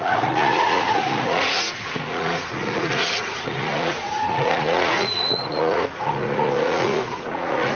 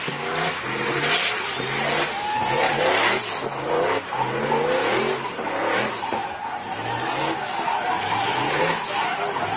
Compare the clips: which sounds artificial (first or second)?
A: first